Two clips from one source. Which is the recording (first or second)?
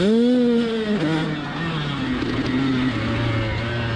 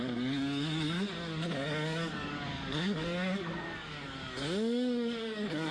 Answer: first